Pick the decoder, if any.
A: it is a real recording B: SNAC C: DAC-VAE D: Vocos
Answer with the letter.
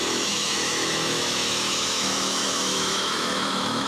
C